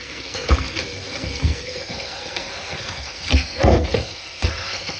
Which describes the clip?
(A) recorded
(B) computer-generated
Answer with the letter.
B